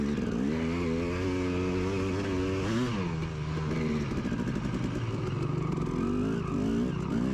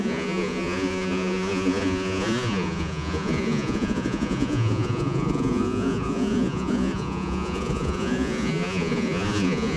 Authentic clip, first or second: first